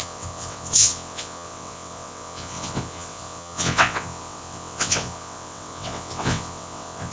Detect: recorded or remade remade